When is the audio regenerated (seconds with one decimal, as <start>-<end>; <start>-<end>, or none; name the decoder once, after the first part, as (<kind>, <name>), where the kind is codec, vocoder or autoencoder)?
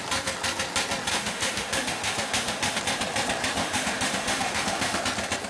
1.1-2.8 (autoencoder, DAC-VAE); 3.6-5.0